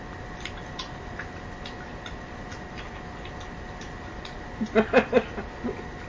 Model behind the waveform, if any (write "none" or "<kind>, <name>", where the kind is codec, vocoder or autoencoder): none